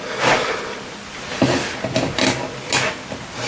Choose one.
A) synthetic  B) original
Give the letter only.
B